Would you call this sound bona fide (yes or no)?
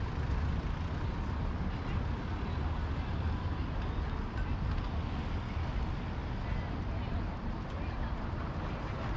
yes